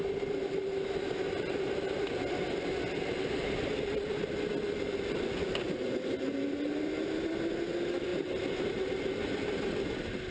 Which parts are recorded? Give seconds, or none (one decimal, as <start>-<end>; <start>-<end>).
0.0-10.3